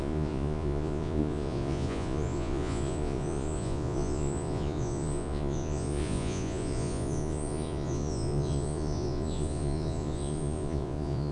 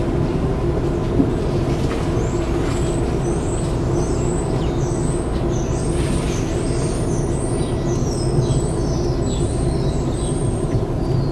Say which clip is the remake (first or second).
first